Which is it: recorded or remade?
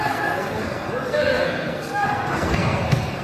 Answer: remade